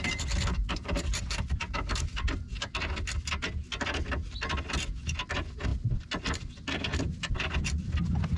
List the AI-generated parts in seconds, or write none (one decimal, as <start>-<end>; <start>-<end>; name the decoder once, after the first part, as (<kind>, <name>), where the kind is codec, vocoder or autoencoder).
0.5-2.3 (vocoder, BigVGAN v2)